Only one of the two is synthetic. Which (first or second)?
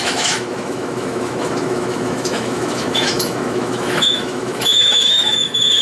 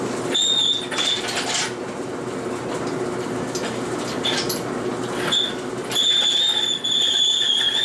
first